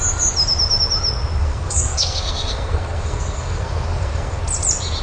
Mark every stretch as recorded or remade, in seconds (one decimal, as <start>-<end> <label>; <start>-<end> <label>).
0.0-1.4 recorded; 1.4-4.4 remade; 4.4-5.0 recorded